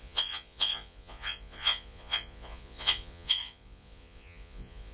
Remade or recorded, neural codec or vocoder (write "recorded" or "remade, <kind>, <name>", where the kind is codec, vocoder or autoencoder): remade, vocoder, Vocos